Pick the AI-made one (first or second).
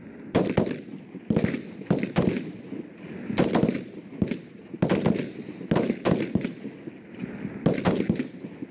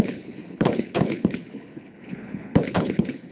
second